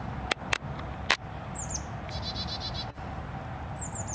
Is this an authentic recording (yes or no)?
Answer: yes